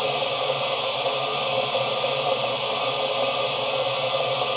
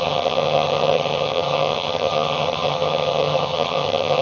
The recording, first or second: first